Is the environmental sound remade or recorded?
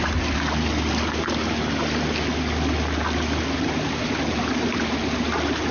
recorded